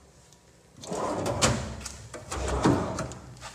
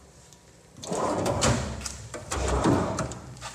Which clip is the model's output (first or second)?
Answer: second